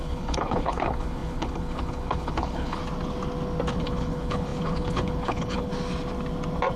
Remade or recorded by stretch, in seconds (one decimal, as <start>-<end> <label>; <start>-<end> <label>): 0.0-2.8 remade; 2.8-3.7 recorded; 3.7-5.7 remade; 5.7-6.8 recorded